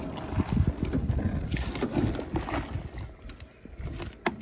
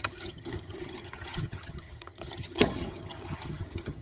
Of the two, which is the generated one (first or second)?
second